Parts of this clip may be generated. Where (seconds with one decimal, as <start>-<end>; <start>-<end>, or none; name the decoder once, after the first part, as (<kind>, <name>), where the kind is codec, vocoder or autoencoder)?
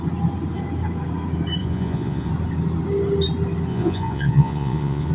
1.6-2.3 (vocoder, Vocos); 3.7-5.1